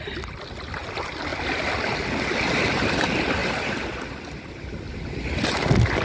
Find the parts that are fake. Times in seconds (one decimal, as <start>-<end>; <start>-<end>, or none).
none